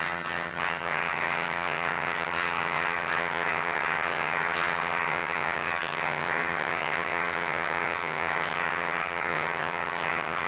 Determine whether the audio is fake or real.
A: fake